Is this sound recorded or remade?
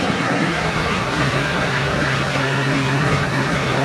remade